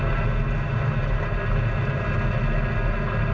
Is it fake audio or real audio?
real